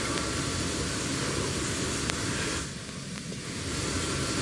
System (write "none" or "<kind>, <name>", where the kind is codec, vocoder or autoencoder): none